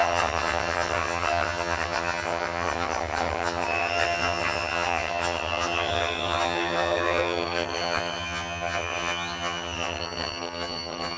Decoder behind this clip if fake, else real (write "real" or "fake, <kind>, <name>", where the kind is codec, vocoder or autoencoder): fake, vocoder, HiFi-GAN